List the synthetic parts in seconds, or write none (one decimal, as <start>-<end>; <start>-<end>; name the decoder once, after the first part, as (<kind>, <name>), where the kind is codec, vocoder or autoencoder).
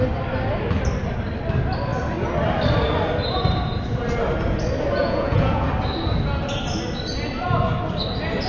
5.0-5.7 (vocoder, Vocos)